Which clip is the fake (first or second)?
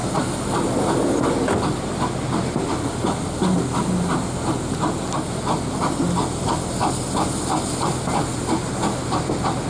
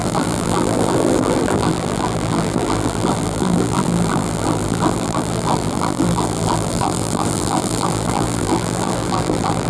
second